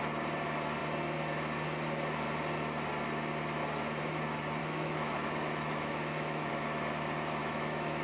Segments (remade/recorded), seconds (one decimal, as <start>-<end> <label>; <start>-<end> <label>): 0.0-4.6 recorded; 4.6-6.5 remade; 6.5-7.4 recorded; 7.4-8.0 remade